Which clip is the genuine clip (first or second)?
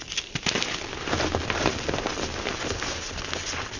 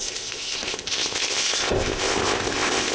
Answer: first